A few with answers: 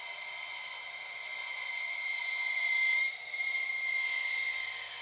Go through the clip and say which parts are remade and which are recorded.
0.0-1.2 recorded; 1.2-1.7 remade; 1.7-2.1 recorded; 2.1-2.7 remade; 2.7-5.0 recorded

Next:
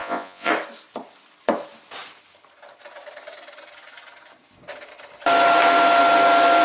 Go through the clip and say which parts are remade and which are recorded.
0.0-0.5 remade; 0.5-6.6 recorded

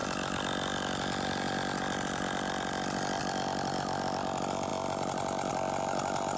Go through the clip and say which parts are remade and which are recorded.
0.0-6.4 recorded

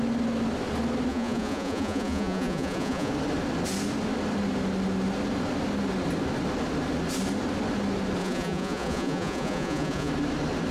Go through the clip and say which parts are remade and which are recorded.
0.0-1.1 recorded; 1.1-3.1 remade; 3.1-8.2 recorded; 8.2-10.1 remade; 10.1-10.7 recorded

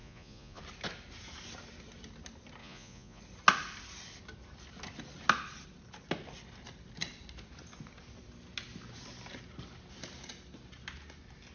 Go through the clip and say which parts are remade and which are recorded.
0.0-0.6 remade; 0.6-2.6 recorded; 2.6-3.2 remade; 3.2-11.5 recorded